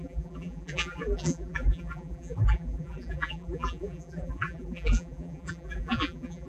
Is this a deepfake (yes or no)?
yes